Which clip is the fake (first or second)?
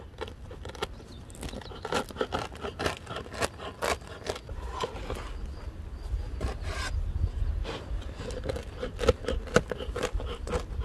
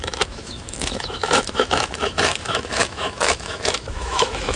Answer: second